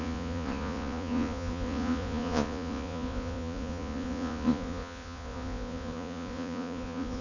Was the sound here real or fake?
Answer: fake